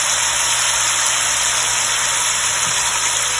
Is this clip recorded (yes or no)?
yes